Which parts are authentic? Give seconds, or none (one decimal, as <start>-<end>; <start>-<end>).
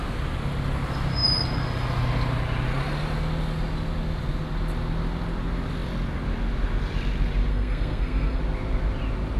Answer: 0.0-7.5; 8.4-9.4